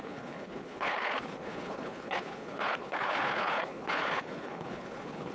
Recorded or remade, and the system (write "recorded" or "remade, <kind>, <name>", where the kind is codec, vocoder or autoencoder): remade, codec, HILCodec